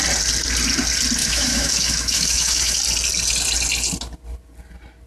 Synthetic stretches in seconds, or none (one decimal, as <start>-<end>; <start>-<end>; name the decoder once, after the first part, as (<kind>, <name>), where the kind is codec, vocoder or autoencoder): 1.2-2.8 (autoencoder, DAC-VAE)